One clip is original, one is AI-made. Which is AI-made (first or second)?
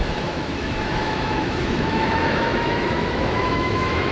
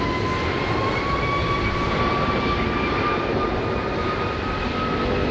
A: first